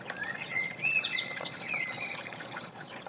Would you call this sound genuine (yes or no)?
no